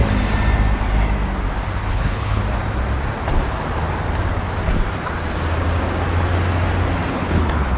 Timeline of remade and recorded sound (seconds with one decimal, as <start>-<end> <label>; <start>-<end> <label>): 0.0-1.9 recorded; 1.9-2.4 remade; 2.4-7.1 recorded; 7.1-7.8 remade